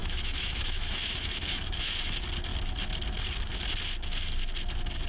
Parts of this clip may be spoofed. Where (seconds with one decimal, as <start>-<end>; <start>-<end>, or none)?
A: 0.0-1.9